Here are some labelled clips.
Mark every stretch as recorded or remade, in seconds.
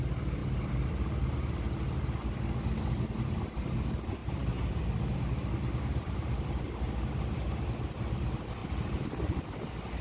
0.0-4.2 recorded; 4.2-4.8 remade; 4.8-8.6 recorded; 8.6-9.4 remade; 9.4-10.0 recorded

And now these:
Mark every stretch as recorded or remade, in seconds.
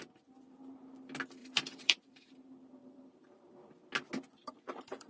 0.0-1.4 recorded; 1.4-2.0 remade; 2.0-2.8 recorded; 2.8-3.7 remade; 3.7-4.4 recorded; 4.4-5.1 remade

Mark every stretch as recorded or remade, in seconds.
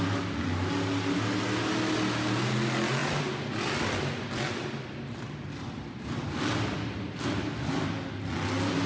0.0-3.0 recorded; 3.0-7.2 remade; 7.2-8.9 recorded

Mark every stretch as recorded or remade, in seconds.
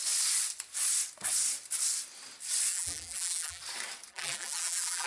0.0-2.7 recorded; 2.7-3.6 remade; 3.6-4.1 recorded; 4.1-5.1 remade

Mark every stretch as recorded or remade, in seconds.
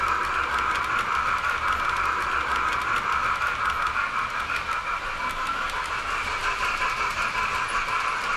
0.0-8.4 recorded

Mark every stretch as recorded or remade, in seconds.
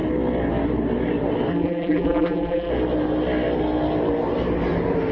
0.0-1.5 recorded; 1.5-2.7 remade; 2.7-5.1 recorded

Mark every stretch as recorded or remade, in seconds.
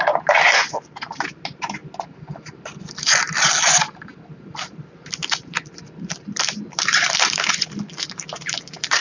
0.0-1.8 remade; 1.8-4.5 recorded; 4.5-9.0 remade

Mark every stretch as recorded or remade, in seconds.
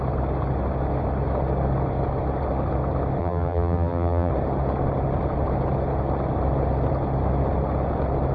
0.0-3.2 recorded; 3.2-4.3 remade; 4.3-8.3 recorded